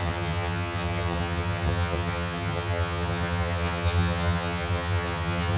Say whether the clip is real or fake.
fake